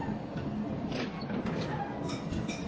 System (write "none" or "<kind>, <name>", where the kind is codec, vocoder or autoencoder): none